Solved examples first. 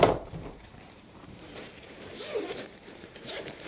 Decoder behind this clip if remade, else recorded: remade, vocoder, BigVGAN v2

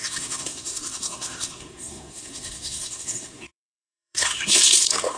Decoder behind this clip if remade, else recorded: remade, codec, SNAC